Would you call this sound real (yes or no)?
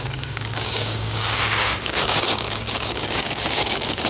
no